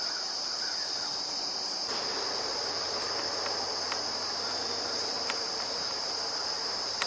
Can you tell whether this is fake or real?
fake